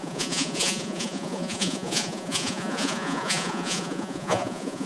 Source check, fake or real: fake